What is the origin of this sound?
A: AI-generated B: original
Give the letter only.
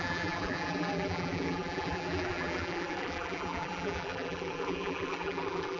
A